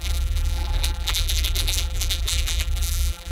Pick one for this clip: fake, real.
fake